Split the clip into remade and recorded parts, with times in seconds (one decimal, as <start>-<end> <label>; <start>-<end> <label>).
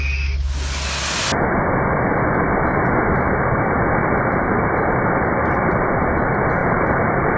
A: 0.0-4.0 recorded; 4.0-5.9 remade; 5.9-6.6 recorded; 6.6-7.4 remade